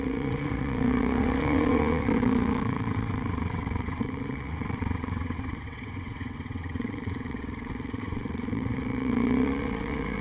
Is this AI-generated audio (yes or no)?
yes